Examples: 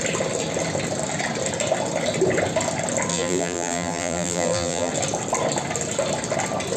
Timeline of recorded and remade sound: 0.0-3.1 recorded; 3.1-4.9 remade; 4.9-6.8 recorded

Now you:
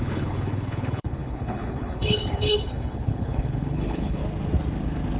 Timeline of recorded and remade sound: 0.0-4.2 remade; 4.2-5.2 recorded

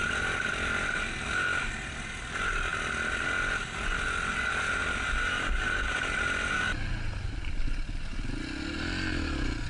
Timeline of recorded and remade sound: 0.0-9.7 recorded